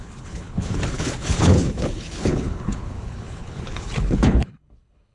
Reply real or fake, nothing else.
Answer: fake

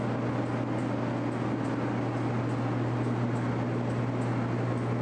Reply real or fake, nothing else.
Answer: real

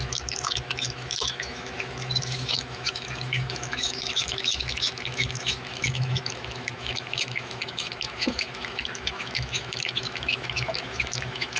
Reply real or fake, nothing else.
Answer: fake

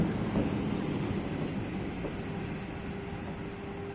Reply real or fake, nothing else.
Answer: real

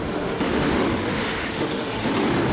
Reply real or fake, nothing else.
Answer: fake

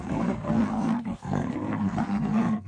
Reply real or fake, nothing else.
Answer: fake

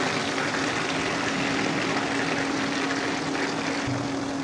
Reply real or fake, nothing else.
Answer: real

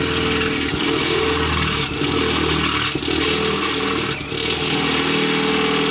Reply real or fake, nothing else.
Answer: real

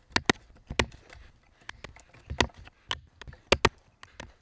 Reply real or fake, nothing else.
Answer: real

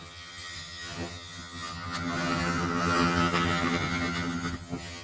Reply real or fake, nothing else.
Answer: fake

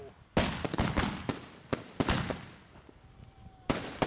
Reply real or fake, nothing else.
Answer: real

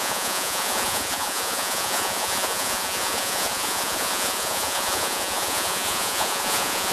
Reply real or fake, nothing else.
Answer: fake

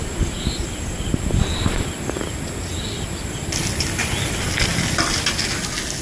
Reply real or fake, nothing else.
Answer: real